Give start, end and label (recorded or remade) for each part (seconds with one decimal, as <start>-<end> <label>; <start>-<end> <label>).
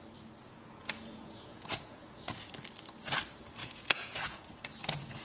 0.0-0.4 recorded; 0.4-2.5 remade; 2.5-3.6 recorded; 3.6-5.2 remade